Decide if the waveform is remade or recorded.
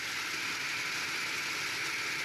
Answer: recorded